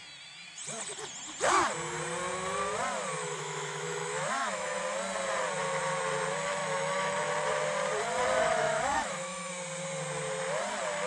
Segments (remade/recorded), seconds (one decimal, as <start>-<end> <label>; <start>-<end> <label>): 0.0-3.2 recorded; 3.2-4.8 remade; 4.8-6.6 recorded; 6.6-7.3 remade; 7.3-8.4 recorded; 8.4-9.5 remade; 9.5-11.1 recorded